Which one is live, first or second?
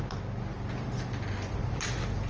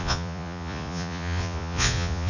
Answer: first